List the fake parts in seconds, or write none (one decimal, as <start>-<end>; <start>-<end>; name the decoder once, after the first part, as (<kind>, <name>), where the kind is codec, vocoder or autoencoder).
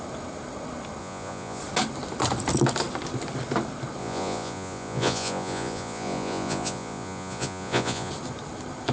1.0-1.6 (vocoder, Vocos); 4.0-8.1